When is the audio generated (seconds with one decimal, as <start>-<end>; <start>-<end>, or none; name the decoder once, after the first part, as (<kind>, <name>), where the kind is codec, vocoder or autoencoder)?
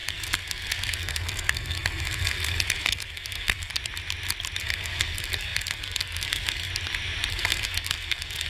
0.0-3.7 (codec, SNAC); 4.6-6.7; 7.3-8.5